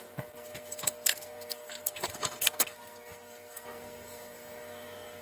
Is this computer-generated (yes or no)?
yes